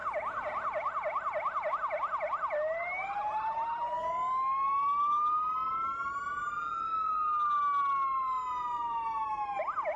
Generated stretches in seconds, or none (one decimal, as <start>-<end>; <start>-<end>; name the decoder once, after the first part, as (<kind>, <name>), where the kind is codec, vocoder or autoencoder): none